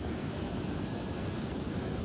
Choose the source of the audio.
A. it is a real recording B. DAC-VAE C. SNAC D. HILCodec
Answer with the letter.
C